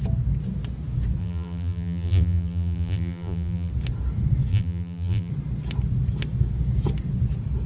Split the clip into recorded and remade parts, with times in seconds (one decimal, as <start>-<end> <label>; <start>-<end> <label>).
0.0-1.2 recorded; 1.2-3.7 remade; 3.7-4.5 recorded; 4.5-5.3 remade; 5.3-7.7 recorded